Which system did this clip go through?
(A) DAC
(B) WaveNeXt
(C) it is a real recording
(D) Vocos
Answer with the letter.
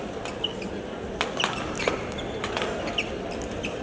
C